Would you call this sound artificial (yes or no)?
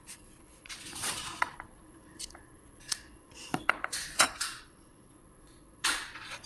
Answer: yes